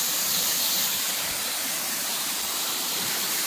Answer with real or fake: fake